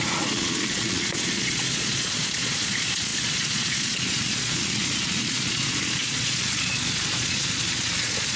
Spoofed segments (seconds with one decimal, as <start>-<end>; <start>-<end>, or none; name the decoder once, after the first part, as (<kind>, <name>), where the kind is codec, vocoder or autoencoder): 0.0-8.4 (vocoder, Vocos)